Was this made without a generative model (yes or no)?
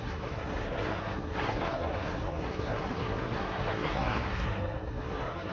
no